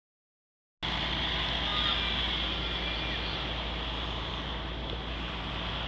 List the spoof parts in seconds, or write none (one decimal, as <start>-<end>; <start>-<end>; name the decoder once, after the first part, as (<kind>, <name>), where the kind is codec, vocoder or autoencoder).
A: none